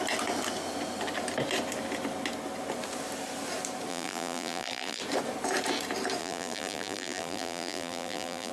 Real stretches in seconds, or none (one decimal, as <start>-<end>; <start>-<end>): 0.0-3.9; 5.0-6.2